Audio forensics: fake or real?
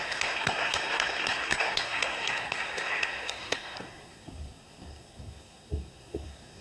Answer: fake